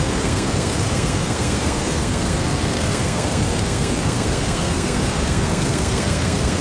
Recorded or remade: remade